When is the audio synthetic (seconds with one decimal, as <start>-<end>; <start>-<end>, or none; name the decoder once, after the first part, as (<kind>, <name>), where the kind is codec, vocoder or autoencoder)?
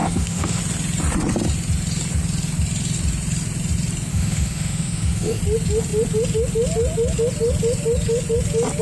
0.0-0.6 (autoencoder, DAC-VAE); 4.1-5.4